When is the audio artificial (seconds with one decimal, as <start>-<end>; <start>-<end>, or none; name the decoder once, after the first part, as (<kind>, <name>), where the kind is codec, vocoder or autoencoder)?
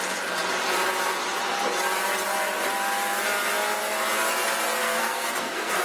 4.8-5.8 (codec, SNAC)